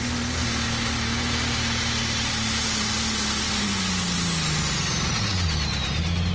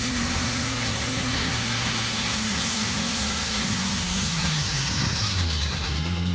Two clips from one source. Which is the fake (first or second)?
second